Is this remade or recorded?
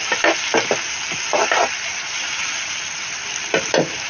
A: recorded